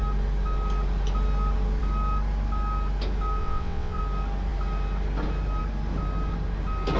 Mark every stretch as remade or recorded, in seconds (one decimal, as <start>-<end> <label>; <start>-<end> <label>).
0.0-3.4 recorded; 3.4-4.0 remade; 4.0-7.0 recorded